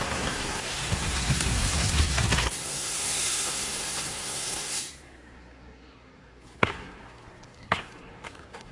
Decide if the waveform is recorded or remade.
remade